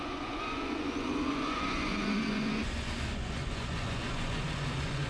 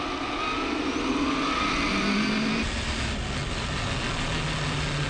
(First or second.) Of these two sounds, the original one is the second